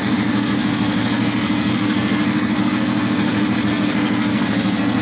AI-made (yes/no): yes